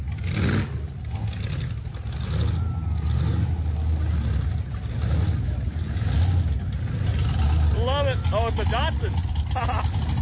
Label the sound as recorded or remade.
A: recorded